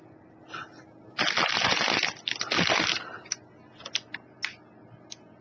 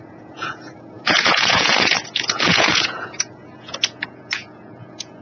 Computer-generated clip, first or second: second